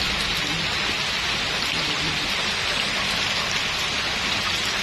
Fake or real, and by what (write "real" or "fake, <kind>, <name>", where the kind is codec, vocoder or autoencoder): real